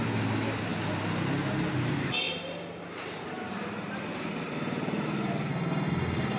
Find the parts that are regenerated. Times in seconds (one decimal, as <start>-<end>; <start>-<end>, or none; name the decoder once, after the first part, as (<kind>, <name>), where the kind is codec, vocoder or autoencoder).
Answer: 5.5-6.4 (codec, DAC)